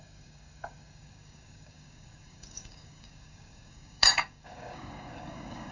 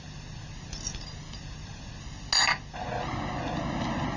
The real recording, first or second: second